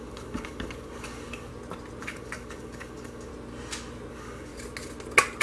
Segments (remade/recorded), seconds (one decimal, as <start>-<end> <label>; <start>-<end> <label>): 0.0-1.5 remade; 1.5-2.0 recorded; 2.0-3.3 remade; 3.3-4.1 recorded; 4.1-4.5 remade; 4.5-5.4 recorded